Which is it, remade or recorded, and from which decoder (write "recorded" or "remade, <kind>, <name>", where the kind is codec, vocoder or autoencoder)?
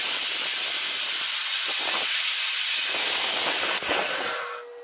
recorded